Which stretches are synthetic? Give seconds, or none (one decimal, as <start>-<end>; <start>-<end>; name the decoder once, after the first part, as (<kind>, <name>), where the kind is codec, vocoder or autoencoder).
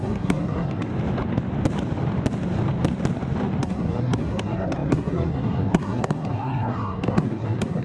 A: 0.0-0.9 (codec, SNAC); 3.6-7.8